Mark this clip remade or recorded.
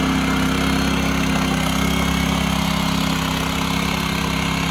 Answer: recorded